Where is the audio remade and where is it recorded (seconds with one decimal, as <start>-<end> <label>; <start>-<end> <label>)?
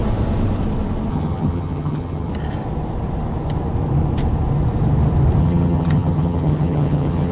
0.0-1.1 recorded; 1.1-2.3 remade; 2.3-5.4 recorded; 5.4-7.3 remade